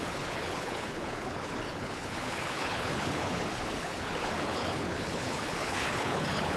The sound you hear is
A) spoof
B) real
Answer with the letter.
A